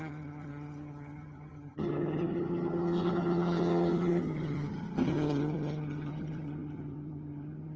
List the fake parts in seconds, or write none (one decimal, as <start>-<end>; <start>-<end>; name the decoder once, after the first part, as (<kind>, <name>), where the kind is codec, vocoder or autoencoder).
0.0-7.8 (vocoder, HiFi-GAN)